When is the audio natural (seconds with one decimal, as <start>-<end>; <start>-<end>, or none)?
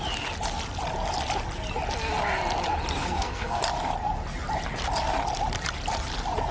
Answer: 0.0-3.0; 3.6-6.5